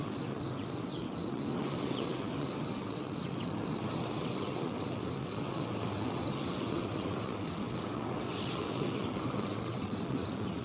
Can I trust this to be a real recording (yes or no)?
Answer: no